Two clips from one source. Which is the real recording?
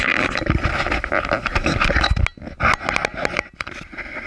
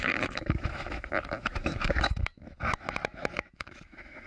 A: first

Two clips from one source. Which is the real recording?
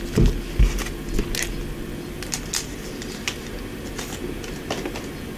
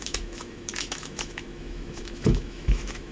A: first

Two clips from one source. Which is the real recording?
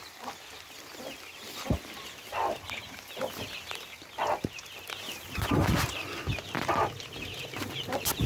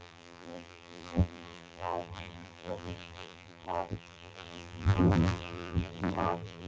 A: first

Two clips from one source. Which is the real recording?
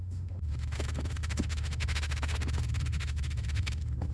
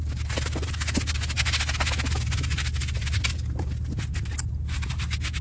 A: second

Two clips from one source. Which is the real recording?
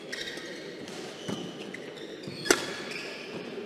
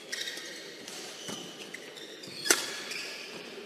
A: first